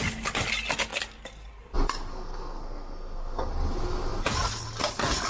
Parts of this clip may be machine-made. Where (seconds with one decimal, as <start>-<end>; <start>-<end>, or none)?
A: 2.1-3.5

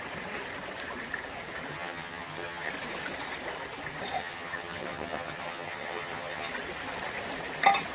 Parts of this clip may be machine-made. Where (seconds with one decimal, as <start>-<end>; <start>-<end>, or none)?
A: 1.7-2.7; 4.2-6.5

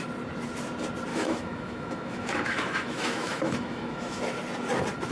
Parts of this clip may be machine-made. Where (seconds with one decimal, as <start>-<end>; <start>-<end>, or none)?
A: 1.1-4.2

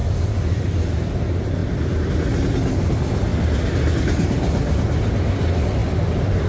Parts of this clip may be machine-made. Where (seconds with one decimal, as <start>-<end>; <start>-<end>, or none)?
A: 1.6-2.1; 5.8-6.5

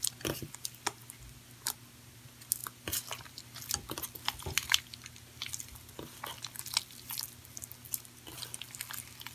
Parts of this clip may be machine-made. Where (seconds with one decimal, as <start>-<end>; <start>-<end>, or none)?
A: none

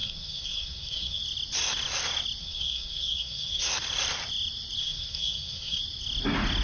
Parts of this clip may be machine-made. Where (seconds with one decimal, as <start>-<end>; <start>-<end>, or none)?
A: 0.0-1.2; 2.4-3.7; 4.8-5.8

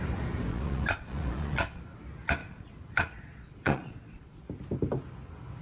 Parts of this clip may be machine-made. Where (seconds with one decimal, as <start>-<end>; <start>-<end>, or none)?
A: 0.5-1.8; 2.4-4.4

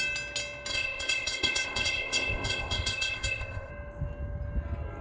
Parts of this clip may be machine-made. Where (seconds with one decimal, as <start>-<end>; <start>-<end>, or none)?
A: 0.7-3.7